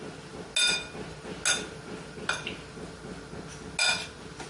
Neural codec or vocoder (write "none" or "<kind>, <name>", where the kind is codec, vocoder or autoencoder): none